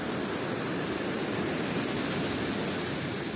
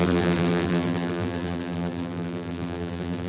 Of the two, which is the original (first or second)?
first